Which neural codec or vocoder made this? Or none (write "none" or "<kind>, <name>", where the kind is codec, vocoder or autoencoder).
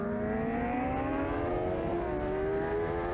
none